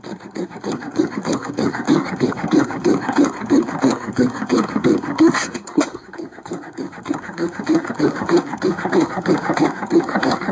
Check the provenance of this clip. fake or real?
fake